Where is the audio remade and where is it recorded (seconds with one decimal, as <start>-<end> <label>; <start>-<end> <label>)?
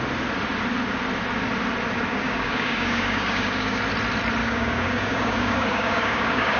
0.0-2.1 recorded; 2.1-3.8 remade; 3.8-4.4 recorded; 4.4-6.6 remade